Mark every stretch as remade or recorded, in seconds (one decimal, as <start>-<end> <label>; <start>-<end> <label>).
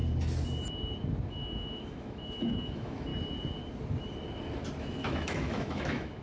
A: 0.0-1.3 recorded; 1.3-3.1 remade; 3.1-4.8 recorded; 4.8-6.2 remade